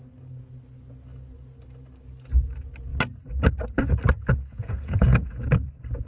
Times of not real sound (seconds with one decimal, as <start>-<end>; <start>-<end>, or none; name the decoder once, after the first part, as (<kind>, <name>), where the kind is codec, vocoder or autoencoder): 4.5-5.5 (vocoder, Vocos)